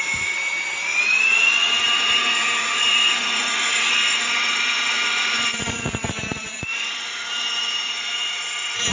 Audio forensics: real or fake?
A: fake